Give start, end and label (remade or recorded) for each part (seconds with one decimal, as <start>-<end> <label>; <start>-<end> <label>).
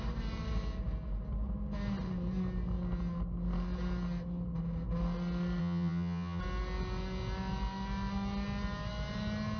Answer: 0.0-5.6 recorded; 5.6-6.4 remade; 6.4-9.6 recorded